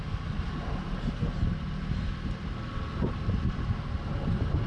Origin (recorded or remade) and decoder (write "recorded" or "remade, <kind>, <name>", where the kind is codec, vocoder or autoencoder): recorded